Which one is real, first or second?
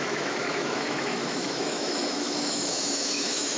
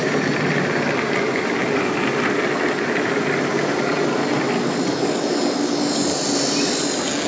second